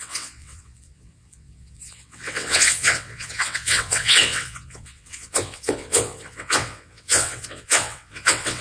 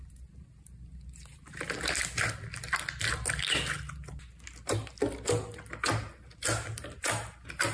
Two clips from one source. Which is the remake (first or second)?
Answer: first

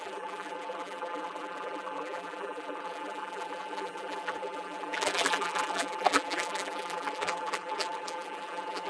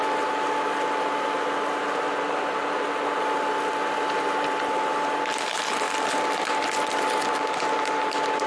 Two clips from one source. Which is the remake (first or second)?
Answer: first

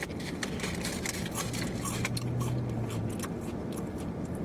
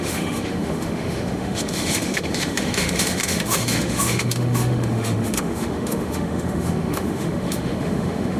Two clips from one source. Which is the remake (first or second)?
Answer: second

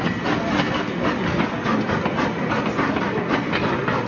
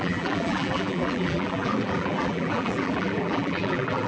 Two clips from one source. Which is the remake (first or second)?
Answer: second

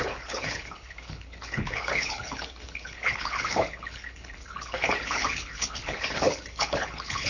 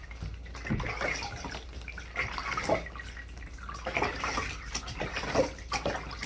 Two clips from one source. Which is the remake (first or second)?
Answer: first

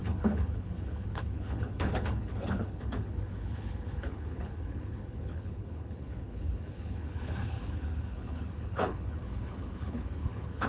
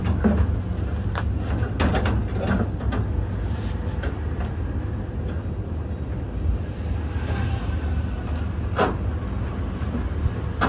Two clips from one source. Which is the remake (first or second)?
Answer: first